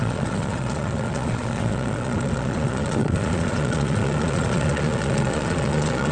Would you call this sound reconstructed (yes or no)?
yes